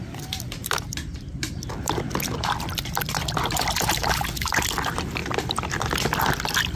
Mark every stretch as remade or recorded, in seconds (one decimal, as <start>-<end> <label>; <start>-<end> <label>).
0.0-6.8 recorded

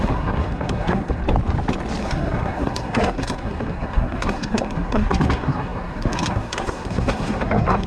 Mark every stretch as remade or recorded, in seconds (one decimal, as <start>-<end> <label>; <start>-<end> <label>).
0.0-1.2 remade; 1.2-2.0 recorded; 2.0-7.9 remade

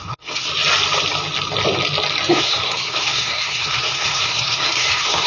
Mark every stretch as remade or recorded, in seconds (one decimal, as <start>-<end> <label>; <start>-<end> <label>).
0.0-0.5 remade; 0.5-2.3 recorded; 2.3-5.3 remade

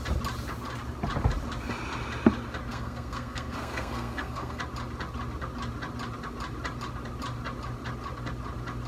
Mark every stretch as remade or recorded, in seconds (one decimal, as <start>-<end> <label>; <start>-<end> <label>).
0.0-2.7 recorded; 2.7-4.6 remade; 4.6-8.9 recorded

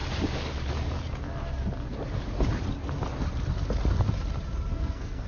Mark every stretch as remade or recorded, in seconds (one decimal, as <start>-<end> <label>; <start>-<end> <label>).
0.0-4.7 recorded; 4.7-5.3 remade

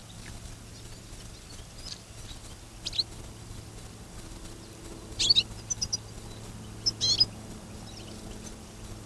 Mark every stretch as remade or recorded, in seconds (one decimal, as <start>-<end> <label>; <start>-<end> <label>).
0.0-9.1 recorded

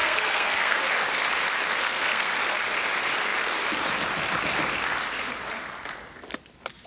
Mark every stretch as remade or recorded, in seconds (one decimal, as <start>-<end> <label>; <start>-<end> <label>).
0.0-0.8 remade; 0.8-1.7 recorded; 1.7-2.3 remade; 2.3-6.9 recorded